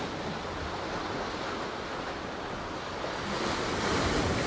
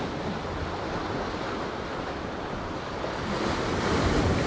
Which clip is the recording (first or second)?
first